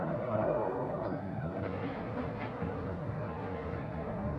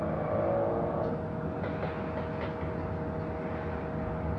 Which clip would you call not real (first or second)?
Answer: first